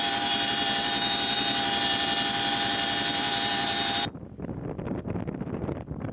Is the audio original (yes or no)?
no